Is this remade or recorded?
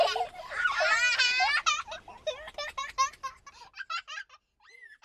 recorded